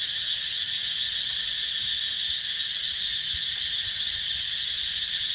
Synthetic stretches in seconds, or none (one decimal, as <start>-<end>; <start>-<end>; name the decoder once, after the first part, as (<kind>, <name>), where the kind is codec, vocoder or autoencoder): none